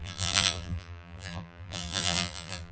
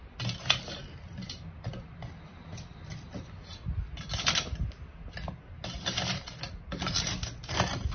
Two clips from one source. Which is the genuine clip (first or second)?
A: second